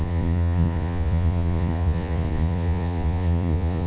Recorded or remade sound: remade